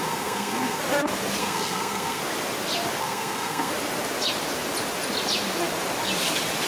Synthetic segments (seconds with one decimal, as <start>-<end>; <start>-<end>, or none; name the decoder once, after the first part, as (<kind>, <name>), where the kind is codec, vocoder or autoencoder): 0.0-0.8 (codec, SNAC); 1.4-2.2; 3.0-3.7